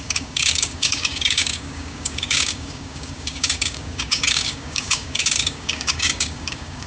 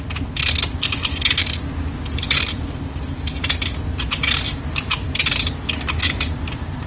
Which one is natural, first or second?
second